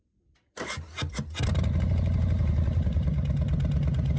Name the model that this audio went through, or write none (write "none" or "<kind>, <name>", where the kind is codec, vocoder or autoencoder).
vocoder, BigVGAN v2